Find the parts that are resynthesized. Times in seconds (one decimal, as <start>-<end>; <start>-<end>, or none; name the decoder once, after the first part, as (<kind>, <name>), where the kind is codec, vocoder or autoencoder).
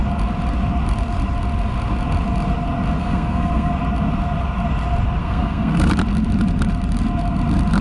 3.0-3.7 (codec, SNAC); 5.2-5.9